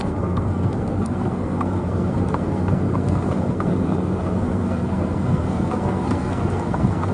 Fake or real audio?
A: fake